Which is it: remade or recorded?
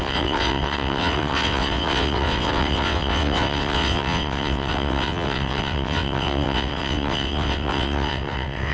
remade